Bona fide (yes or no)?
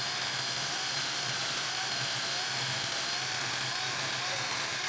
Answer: yes